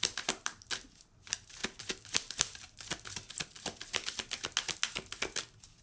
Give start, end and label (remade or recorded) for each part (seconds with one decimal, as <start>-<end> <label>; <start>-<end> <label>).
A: 0.0-5.8 recorded